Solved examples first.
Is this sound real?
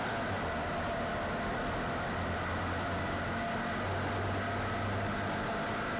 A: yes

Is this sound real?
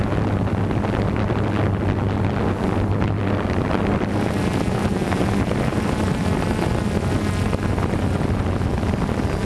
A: yes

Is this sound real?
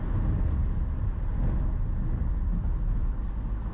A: yes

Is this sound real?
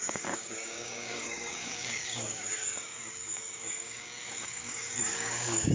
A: no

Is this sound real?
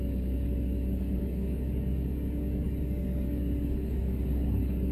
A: no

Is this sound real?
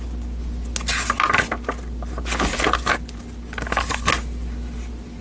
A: yes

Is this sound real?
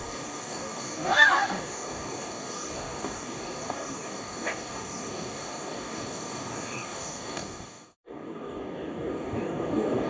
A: no